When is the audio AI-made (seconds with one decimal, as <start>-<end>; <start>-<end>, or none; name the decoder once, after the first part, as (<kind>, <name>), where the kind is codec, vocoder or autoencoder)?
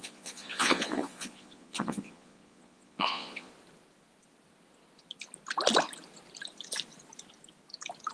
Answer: 0.0-3.5 (vocoder, Vocos)